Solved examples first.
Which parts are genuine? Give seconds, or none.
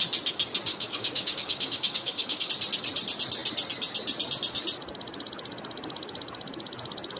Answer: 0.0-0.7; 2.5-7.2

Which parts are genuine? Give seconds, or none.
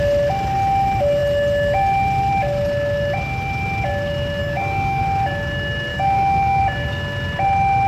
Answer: 0.0-4.4; 5.0-5.9; 6.6-7.9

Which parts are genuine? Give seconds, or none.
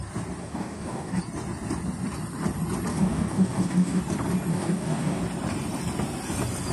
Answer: 0.0-0.4; 1.2-2.9; 4.0-4.5; 5.2-6.7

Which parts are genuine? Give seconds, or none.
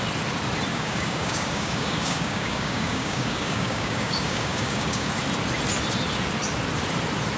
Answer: 0.0-0.7; 5.1-7.4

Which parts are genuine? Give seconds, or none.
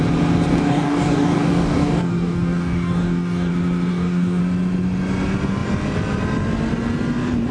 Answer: 0.0-0.5; 3.5-3.9; 4.4-7.5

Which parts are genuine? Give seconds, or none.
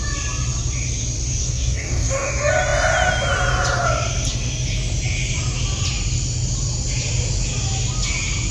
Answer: 0.0-1.4; 2.3-8.5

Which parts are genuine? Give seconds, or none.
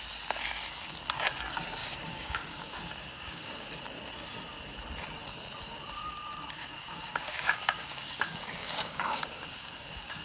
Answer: 0.0-1.8; 3.7-6.6